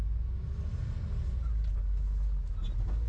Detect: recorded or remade recorded